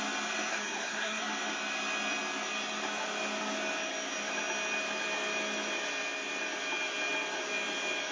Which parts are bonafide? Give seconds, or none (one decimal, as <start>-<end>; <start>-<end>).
0.0-0.5; 1.2-8.1